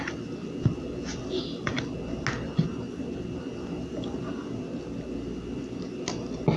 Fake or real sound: real